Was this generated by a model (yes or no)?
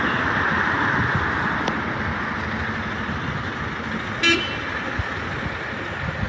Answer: no